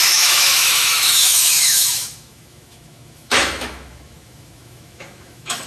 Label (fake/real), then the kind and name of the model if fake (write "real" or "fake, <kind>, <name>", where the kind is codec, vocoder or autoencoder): fake, autoencoder, DAC-VAE